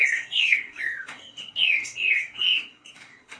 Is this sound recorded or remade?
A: remade